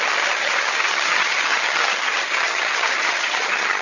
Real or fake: fake